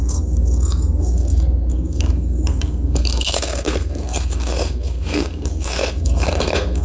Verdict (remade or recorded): remade